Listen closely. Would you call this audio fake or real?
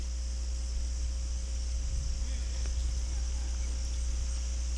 real